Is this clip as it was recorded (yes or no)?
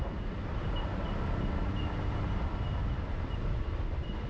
yes